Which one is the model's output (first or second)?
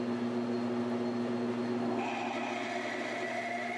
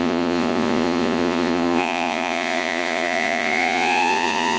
second